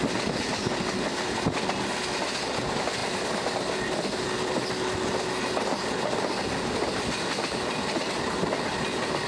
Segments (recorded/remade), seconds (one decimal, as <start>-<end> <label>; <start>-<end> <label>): 0.0-9.3 recorded